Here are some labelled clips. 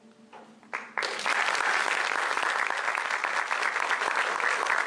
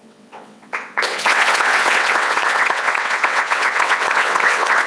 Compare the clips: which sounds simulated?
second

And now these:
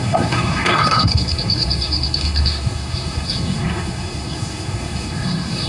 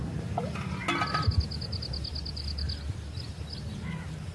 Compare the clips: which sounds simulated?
first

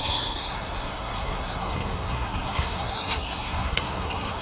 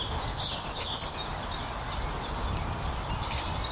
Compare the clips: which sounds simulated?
first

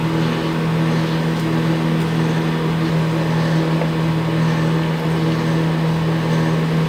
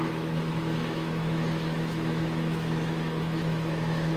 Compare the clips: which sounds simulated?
second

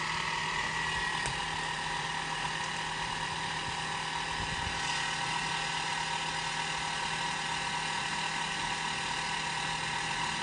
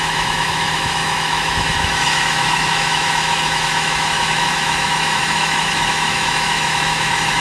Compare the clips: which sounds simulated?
second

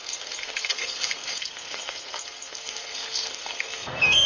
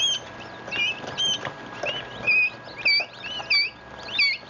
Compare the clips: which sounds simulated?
first